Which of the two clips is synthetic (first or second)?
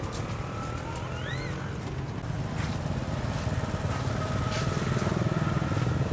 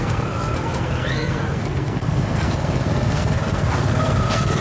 second